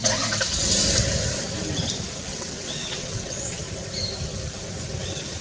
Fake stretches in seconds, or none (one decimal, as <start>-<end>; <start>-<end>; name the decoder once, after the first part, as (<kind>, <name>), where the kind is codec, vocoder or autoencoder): 2.3-3.6 (vocoder, WaveNeXt)